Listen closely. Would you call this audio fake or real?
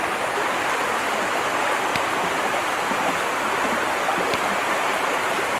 real